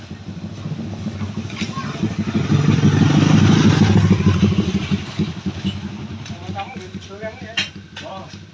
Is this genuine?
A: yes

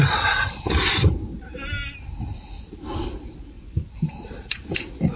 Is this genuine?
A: yes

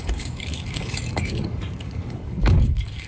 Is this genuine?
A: no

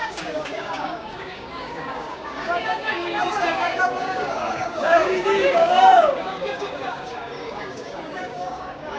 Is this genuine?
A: no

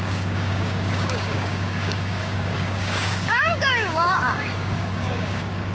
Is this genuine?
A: no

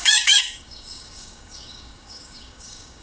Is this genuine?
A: no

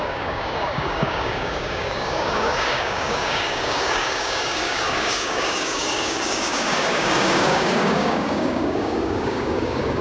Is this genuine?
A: no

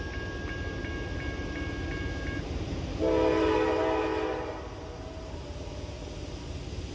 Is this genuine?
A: yes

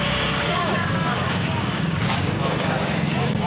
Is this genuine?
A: no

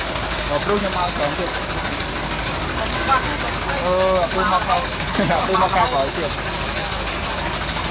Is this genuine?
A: no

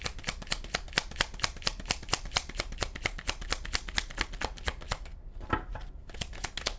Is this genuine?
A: yes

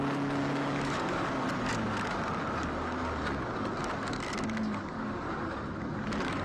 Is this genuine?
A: no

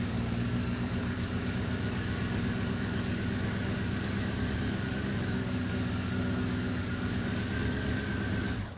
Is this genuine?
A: no